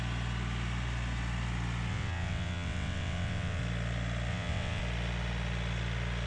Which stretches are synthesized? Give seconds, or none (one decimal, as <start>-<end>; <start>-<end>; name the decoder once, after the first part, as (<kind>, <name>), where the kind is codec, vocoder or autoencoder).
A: 1.9-3.6 (vocoder, WaveNeXt); 4.3-4.8

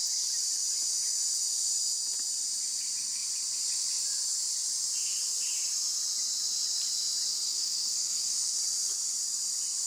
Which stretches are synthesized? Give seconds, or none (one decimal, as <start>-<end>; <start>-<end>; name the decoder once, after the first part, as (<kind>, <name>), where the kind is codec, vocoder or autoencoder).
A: 7.3-8.6 (codec, SNAC)

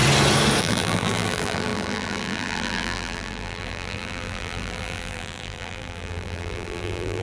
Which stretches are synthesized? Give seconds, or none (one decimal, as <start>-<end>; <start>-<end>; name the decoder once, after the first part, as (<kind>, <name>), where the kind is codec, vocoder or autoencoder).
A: 0.6-7.2 (vocoder, BigVGAN v2)

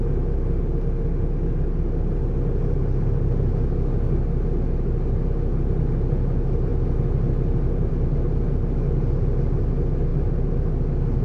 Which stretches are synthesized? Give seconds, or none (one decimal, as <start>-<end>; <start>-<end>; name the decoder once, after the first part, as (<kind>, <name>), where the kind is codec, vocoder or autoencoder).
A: none

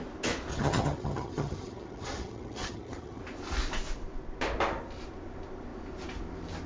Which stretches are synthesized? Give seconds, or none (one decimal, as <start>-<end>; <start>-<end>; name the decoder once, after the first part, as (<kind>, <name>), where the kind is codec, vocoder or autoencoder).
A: 0.5-3.2 (vocoder, HiFi-GAN)

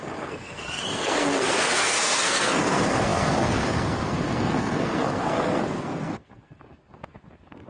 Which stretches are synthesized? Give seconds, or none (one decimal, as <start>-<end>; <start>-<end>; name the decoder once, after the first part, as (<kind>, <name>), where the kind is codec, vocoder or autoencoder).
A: 0.0-7.7 (codec, SNAC)